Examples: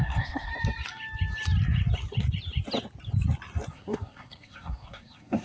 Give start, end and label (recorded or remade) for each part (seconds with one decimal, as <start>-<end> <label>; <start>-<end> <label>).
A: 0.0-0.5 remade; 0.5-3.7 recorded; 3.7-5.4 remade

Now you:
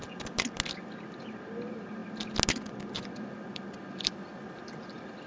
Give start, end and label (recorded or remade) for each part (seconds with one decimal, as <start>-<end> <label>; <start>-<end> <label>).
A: 0.0-5.3 recorded

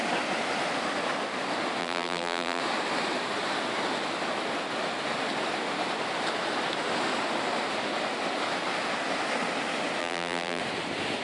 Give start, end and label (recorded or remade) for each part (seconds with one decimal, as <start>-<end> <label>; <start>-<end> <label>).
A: 0.0-1.8 recorded; 1.8-2.6 remade; 2.6-10.0 recorded; 10.0-10.6 remade; 10.6-11.2 recorded

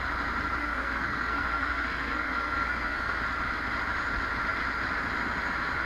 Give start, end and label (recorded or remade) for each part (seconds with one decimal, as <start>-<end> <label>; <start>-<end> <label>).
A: 0.0-0.6 recorded; 0.6-3.2 remade; 3.2-5.9 recorded

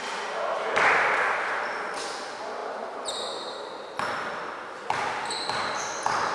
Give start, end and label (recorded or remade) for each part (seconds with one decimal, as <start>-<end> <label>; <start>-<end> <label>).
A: 0.0-6.3 recorded